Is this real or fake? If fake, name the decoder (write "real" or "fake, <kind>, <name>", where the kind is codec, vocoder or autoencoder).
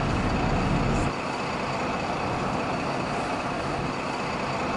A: real